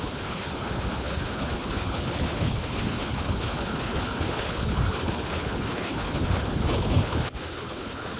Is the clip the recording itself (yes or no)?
no